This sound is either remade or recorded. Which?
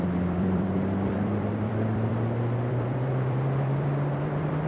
remade